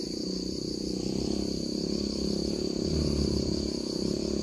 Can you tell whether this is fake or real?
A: real